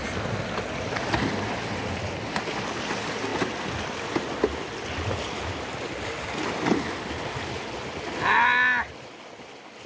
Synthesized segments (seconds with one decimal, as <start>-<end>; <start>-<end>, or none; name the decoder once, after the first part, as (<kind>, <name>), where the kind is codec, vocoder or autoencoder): none